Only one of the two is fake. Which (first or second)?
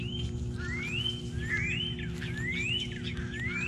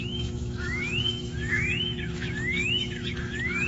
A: second